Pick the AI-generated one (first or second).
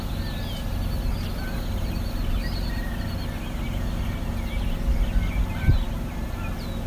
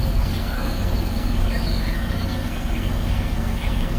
second